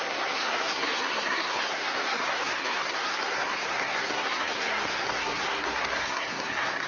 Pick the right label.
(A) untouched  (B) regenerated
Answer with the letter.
B